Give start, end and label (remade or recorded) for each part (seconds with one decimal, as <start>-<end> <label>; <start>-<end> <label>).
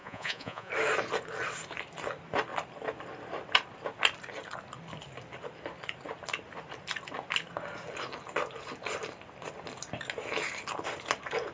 0.0-0.7 remade; 0.7-11.5 recorded